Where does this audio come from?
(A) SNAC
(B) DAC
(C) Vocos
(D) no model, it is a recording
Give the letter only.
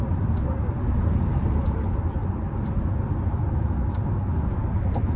D